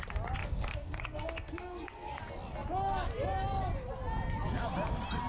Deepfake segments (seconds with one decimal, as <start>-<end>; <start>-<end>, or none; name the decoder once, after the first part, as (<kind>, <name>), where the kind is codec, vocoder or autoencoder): 0.4-2.2 (codec, SNAC)